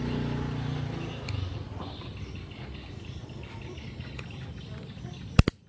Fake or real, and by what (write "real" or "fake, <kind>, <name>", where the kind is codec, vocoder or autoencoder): real